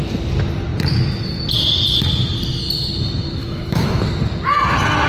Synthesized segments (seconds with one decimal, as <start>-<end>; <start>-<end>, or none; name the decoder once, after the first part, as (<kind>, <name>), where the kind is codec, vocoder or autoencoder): 3.4-4.0 (autoencoder, DAC-VAE)